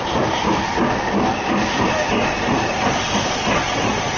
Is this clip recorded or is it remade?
recorded